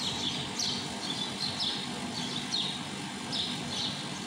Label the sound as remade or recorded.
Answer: recorded